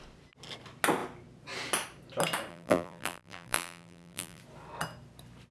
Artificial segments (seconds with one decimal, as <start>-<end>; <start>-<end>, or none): 2.5-4.4

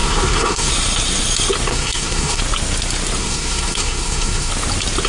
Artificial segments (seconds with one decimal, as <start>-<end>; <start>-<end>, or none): 0.0-0.7; 1.7-2.4; 3.2-4.5

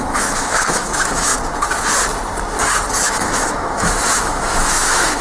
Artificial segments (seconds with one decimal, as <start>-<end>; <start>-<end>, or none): 0.0-1.3; 2.9-5.2

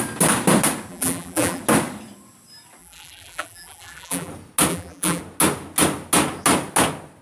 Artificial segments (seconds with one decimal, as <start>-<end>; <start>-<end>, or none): 0.9-1.6; 2.8-4.3; 4.7-5.2

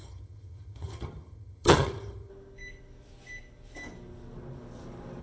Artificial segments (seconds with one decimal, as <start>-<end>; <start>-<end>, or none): 0.0-2.3

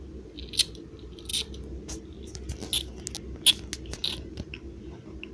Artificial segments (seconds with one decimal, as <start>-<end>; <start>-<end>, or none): none